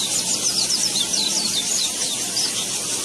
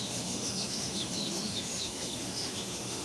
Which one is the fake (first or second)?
second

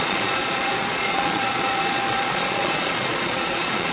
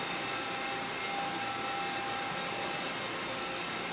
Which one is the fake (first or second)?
first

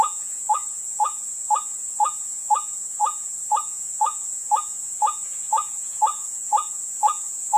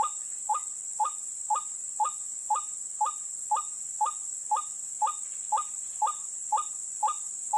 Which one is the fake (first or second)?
first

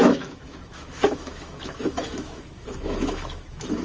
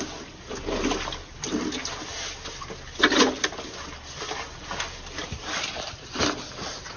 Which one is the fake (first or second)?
first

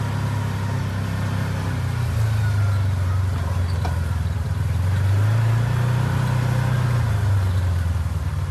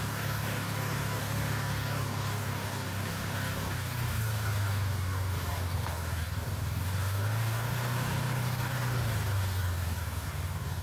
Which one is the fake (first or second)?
second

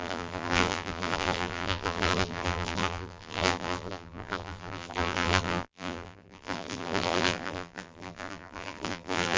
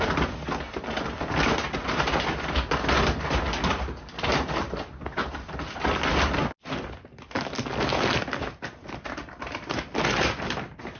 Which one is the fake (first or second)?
first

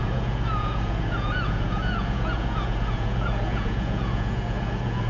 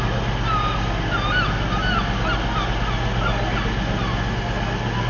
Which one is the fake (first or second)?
first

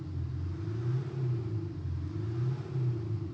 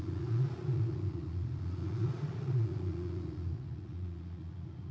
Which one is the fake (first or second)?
second